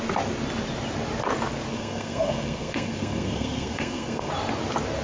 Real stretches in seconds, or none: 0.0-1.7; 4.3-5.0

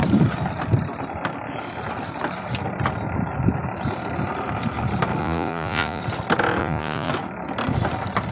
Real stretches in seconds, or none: 0.0-5.2; 6.0-6.6; 7.1-8.3

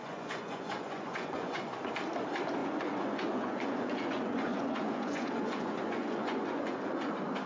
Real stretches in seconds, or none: 1.7-2.6; 7.1-7.5

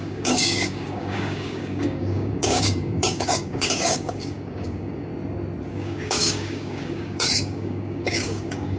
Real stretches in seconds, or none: 5.1-5.7

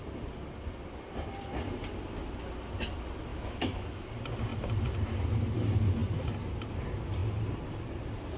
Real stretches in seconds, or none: 0.0-3.3; 4.1-8.4

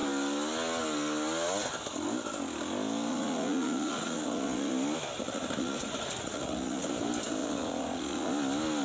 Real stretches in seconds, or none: 0.0-3.1; 4.7-5.2; 6.9-7.4; 8.3-8.8